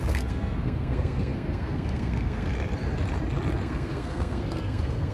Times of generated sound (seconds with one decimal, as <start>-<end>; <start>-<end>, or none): 0.0-2.5; 3.6-5.1